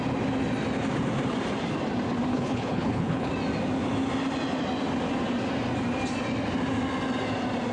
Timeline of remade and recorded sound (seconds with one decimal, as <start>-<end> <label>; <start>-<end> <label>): 0.0-2.3 recorded; 2.3-3.3 remade; 3.3-7.7 recorded